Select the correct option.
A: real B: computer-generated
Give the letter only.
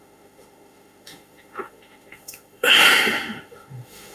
B